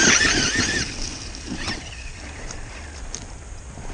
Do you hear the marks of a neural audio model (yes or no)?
no